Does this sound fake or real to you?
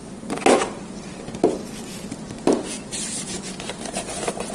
real